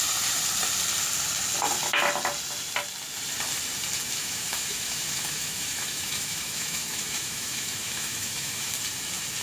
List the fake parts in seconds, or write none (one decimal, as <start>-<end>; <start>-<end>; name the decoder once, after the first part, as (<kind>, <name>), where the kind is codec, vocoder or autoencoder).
4.2-8.7 (autoencoder, DAC-VAE)